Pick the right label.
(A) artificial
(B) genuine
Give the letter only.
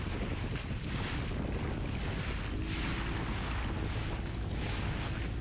B